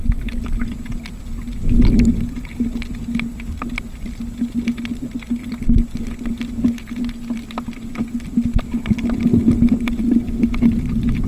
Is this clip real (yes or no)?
yes